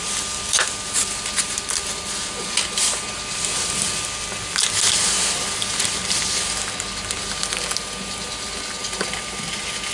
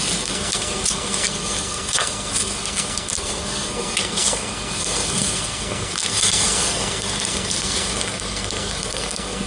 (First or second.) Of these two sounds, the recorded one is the first